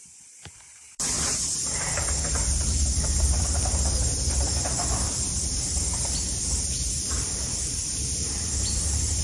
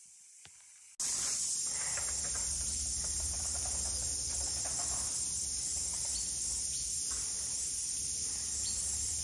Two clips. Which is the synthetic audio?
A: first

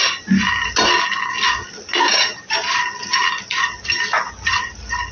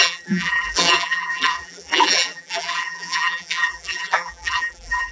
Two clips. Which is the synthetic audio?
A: second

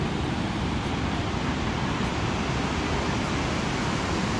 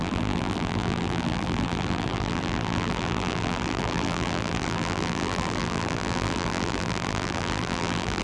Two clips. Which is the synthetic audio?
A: second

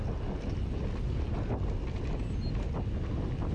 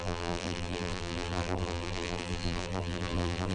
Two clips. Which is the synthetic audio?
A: second